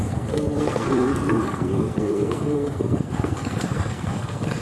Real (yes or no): no